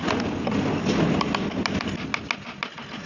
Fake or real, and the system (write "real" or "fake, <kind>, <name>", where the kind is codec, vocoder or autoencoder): real